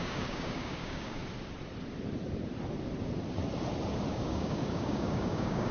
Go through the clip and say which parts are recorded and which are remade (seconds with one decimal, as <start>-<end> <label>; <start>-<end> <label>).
0.0-1.2 remade; 1.2-4.1 recorded; 4.1-5.7 remade